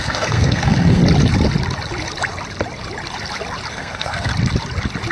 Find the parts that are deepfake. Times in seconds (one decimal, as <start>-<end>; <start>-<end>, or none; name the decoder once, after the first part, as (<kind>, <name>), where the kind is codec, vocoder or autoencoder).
0.0-1.0 (codec, SNAC); 3.7-4.3

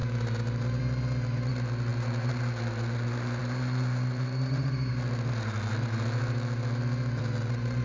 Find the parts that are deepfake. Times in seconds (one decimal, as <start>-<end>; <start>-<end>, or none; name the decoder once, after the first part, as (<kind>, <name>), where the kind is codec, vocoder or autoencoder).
none

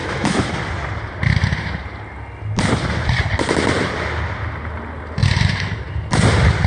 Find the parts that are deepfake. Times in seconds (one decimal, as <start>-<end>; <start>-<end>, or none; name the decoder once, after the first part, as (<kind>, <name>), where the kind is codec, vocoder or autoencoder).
0.0-0.5 (autoencoder, DAC-VAE)

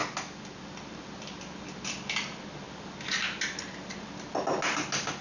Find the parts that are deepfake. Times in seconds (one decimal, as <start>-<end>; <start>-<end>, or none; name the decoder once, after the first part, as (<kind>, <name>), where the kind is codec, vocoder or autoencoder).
none

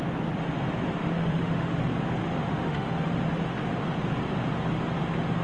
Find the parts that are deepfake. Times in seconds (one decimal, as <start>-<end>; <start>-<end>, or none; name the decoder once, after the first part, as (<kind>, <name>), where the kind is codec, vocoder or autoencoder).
1.0-1.8 (autoencoder, DAC-VAE); 2.2-3.2

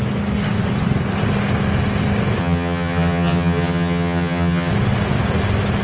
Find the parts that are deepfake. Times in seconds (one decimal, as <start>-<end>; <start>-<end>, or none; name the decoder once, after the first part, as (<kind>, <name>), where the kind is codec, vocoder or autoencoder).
2.4-4.7 (vocoder, HiFi-GAN)

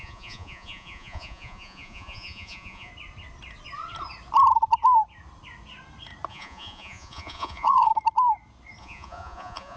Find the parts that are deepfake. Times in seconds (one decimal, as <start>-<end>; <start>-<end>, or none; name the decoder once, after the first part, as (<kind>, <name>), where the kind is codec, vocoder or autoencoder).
0.0-2.9 (vocoder, Vocos); 6.3-7.9; 8.8-9.8